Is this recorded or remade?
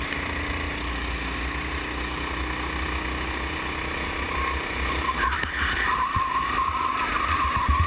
recorded